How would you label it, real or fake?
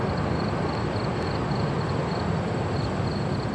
real